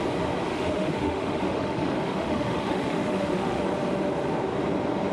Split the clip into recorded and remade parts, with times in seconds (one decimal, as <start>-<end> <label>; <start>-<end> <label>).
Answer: 0.0-0.5 recorded; 0.5-3.6 remade; 3.6-5.1 recorded